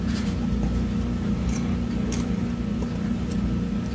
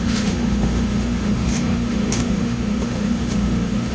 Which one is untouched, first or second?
first